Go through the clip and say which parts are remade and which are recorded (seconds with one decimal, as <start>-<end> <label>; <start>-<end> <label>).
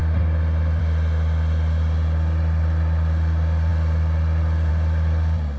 0.0-5.6 recorded